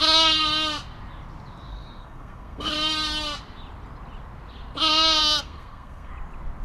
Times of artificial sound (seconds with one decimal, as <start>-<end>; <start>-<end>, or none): 1.7-2.7; 5.2-6.1